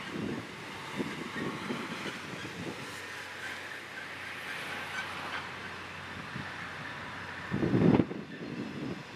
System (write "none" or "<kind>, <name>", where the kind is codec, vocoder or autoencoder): none